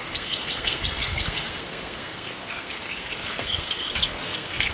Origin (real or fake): fake